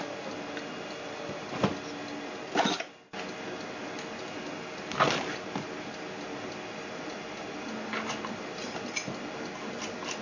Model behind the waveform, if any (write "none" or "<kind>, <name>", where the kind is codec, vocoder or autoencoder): none